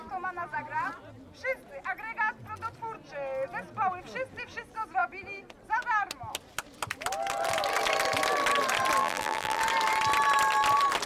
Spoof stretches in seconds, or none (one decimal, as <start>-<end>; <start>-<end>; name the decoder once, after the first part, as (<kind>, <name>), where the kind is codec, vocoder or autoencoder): 9.0-9.6 (vocoder, BigVGAN v2)